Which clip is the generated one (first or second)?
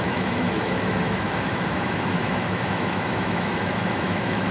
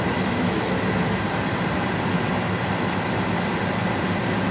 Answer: first